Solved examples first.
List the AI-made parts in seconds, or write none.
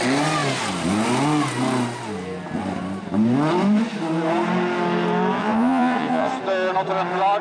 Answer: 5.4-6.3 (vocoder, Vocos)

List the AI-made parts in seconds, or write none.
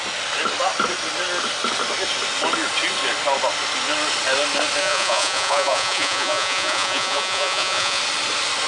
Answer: 4.8-8.0 (vocoder, Vocos)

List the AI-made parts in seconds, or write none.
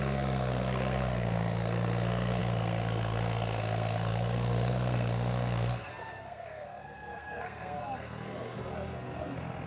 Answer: 0.0-9.7 (codec, SNAC)